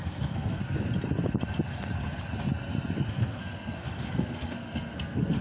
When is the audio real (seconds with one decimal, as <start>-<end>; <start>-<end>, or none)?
0.6-3.1